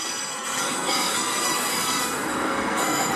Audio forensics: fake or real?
fake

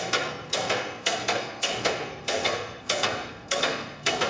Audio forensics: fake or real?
fake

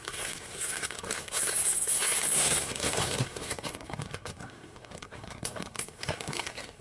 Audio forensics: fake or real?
fake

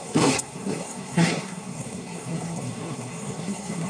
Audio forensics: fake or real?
fake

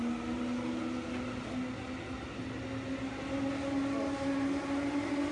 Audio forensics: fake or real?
real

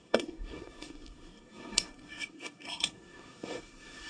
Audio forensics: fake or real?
fake